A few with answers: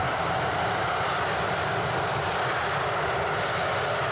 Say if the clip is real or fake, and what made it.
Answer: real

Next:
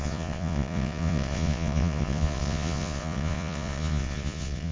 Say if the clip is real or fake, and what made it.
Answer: fake, vocoder, Vocos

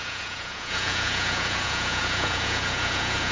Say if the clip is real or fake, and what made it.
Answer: fake, vocoder, Vocos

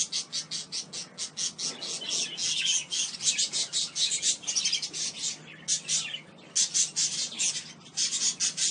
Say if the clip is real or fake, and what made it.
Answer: real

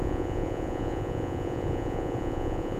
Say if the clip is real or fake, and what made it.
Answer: fake, vocoder, Vocos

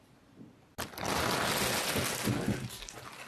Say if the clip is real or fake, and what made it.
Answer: real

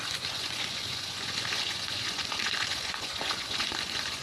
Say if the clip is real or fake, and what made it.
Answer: fake, vocoder, Vocos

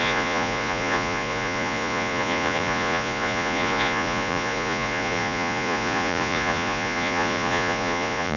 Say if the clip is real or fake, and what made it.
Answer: fake, vocoder, Vocos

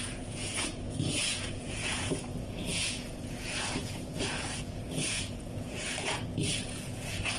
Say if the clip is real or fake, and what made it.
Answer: fake, vocoder, Vocos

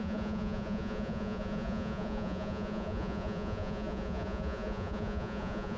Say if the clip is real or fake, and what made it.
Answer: fake, vocoder, Vocos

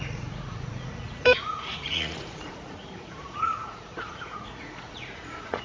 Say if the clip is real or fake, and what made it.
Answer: fake, vocoder, Vocos